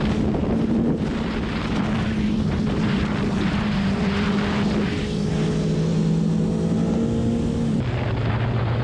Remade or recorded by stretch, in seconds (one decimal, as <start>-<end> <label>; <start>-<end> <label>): 0.0-0.4 recorded; 0.4-5.3 remade; 5.3-8.8 recorded